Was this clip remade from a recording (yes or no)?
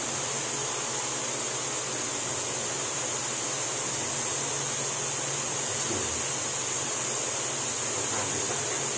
no